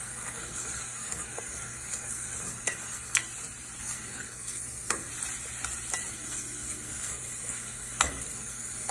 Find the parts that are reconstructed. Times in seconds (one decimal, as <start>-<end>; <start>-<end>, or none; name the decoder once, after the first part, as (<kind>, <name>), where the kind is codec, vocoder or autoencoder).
0.0-3.2 (codec, SNAC); 3.8-5.1; 6.1-8.9